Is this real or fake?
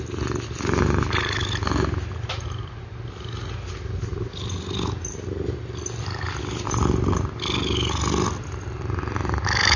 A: real